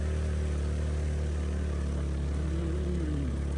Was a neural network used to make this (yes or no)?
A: no